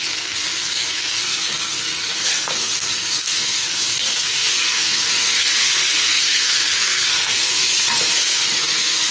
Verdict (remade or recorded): remade